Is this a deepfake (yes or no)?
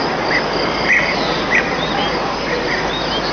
no